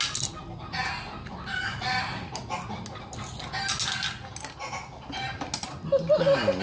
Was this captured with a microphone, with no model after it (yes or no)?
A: yes